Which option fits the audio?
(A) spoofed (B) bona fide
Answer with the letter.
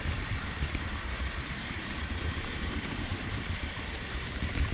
A